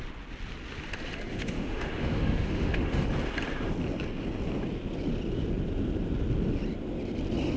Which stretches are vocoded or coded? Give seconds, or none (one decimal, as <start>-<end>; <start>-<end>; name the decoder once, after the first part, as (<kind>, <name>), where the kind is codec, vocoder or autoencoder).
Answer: 1.3-3.0 (autoencoder, DAC-VAE)